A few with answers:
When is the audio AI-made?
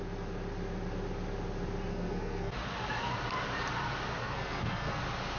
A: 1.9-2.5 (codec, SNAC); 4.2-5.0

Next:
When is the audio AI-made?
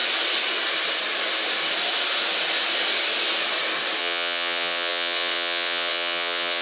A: 4.0-6.6 (vocoder, WaveNeXt)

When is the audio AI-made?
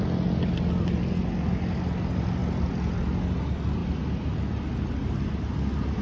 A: none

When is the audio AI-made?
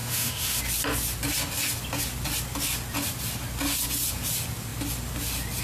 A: 0.0-0.6 (autoencoder, DAC-VAE)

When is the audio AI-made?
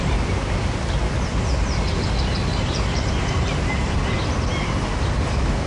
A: 1.3-2.1 (vocoder, BigVGAN v2); 2.5-3.9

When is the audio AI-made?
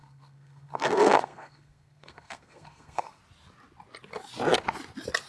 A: 0.0-3.2 (codec, SNAC)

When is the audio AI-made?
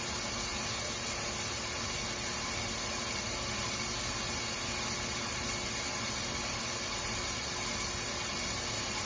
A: none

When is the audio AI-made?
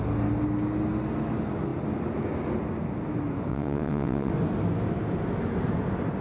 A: 3.5-4.3 (vocoder, WaveNeXt)